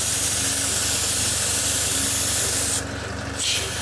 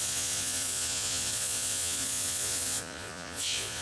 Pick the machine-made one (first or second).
second